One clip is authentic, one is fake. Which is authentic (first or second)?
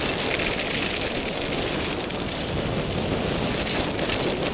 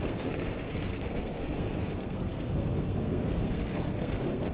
first